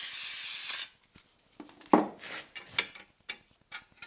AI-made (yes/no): no